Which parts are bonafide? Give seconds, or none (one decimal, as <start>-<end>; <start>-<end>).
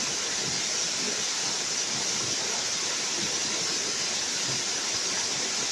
0.0-5.7